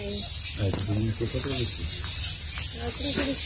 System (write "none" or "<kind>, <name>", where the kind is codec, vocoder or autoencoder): none